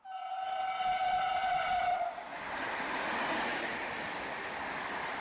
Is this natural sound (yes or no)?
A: yes